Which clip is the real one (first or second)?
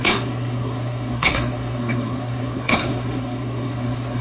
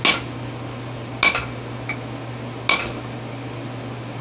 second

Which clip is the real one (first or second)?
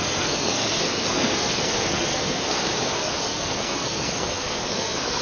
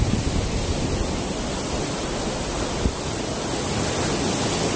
second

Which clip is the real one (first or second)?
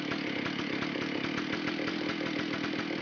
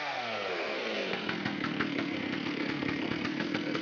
first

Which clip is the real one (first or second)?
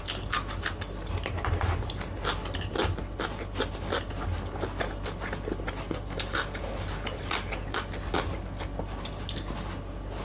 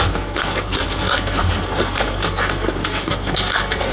first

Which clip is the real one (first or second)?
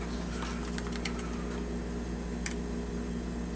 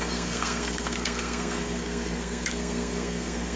first